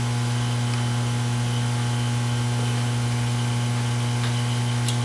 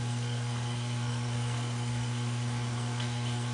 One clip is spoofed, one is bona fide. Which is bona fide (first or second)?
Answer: first